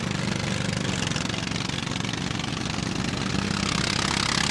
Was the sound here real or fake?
real